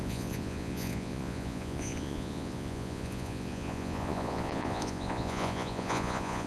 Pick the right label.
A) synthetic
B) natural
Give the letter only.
A